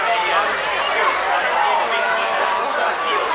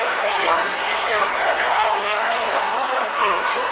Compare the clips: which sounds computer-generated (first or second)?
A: second